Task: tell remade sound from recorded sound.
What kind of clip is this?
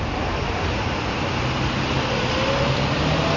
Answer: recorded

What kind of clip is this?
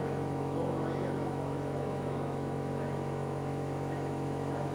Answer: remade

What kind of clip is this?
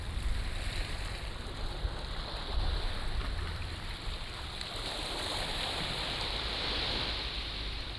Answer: remade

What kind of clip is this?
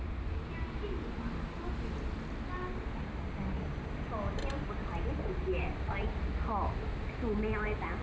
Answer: recorded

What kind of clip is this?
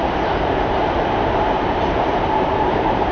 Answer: remade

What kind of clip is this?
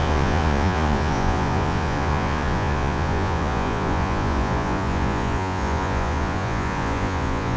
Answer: remade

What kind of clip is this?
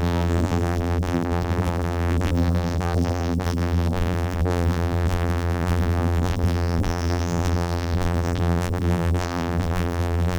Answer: remade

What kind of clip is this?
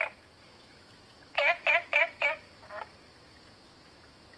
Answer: remade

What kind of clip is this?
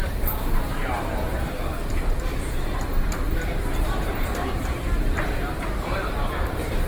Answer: remade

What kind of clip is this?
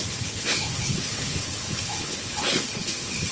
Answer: remade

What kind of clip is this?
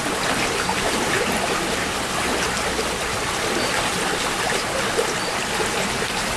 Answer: recorded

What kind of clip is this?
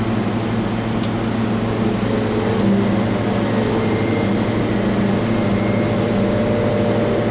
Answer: recorded